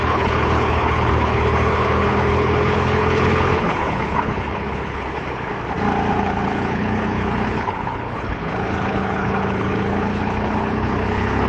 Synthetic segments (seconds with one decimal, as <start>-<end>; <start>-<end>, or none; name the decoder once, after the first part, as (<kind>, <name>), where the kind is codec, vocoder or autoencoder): 0.0-5.5 (codec, HILCodec); 6.1-11.5